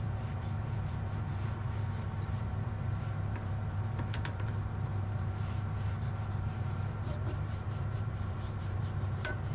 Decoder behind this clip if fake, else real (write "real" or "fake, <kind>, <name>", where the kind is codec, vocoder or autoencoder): fake, vocoder, BigVGAN v2